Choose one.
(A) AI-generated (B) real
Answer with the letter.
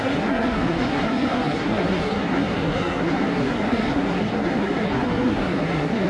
A